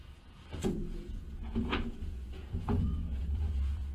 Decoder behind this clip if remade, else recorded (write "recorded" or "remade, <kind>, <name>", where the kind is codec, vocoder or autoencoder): remade, vocoder, Vocos